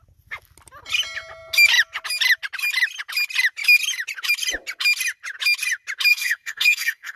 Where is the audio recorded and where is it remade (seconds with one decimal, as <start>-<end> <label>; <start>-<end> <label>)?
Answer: 0.0-6.1 recorded; 6.1-7.2 remade